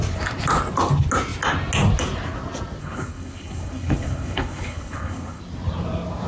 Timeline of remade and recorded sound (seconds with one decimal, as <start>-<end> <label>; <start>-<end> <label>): 0.0-2.8 recorded; 2.8-5.4 remade; 5.4-6.3 recorded